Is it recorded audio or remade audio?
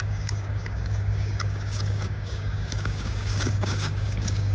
remade